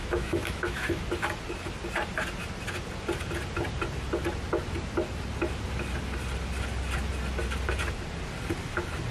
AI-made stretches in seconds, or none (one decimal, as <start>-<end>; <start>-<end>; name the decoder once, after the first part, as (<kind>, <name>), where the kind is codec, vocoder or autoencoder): 0.0-1.0 (autoencoder, DAC-VAE)